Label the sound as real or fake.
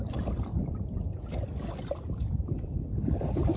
real